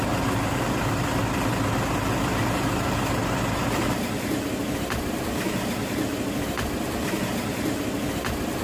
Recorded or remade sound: recorded